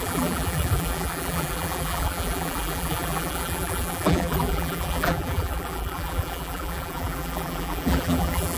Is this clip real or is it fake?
fake